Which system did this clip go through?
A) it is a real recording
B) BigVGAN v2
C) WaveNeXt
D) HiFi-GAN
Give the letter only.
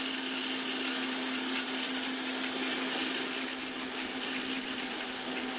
A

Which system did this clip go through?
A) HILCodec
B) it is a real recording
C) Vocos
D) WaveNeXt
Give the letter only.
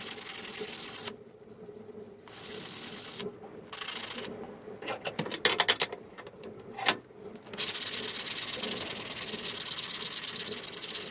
B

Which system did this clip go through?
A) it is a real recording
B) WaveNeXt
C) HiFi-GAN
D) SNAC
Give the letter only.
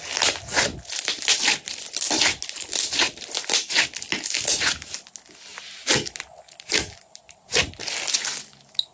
A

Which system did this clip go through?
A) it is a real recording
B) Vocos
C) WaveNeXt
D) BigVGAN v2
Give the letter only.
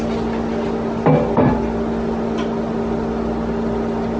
A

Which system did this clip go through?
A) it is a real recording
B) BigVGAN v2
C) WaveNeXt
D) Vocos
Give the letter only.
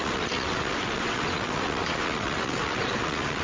C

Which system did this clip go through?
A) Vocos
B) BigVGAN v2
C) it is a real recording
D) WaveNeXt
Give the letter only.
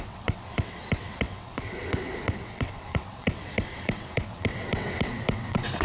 D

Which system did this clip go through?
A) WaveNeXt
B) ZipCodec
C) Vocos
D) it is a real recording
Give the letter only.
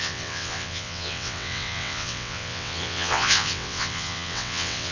A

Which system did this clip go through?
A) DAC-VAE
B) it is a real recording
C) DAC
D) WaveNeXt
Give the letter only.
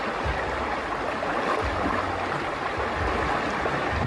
B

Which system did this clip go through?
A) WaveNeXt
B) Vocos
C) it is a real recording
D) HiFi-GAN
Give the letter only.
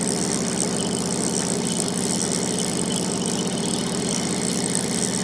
C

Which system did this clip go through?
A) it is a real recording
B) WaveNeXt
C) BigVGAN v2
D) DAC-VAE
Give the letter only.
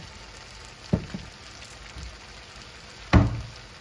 A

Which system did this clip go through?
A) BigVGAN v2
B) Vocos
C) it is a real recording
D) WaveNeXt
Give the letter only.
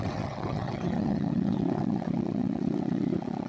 D